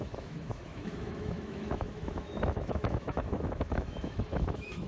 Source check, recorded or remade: remade